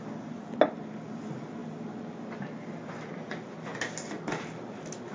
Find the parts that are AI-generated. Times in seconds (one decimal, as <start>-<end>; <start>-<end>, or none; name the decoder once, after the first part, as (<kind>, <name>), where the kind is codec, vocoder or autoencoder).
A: none